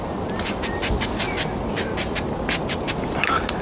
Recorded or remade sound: recorded